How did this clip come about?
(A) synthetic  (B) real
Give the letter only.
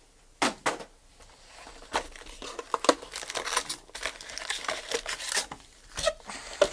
B